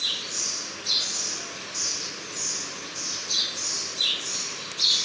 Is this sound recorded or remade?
recorded